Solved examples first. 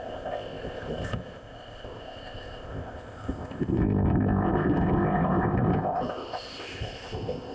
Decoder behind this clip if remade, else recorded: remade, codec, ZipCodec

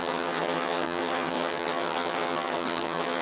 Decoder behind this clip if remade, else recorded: remade, vocoder, HiFi-GAN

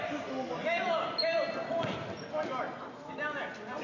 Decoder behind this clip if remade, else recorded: recorded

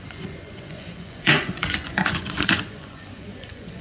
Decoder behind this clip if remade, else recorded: remade, vocoder, Vocos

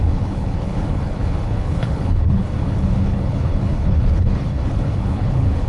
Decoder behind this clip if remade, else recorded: remade, codec, HILCodec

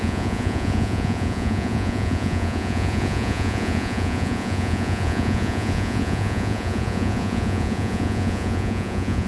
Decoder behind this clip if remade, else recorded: remade, vocoder, Vocos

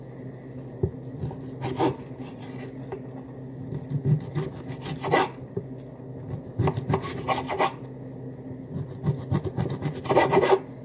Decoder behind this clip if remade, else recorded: recorded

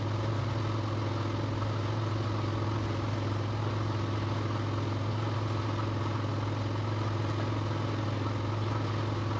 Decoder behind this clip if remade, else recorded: recorded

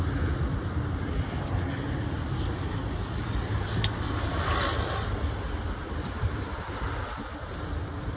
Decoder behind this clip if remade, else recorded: remade, vocoder, BigVGAN v2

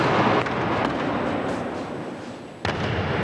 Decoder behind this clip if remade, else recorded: recorded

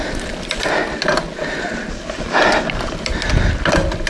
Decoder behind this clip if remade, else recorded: recorded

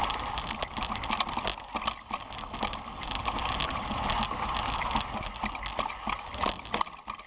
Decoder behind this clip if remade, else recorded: recorded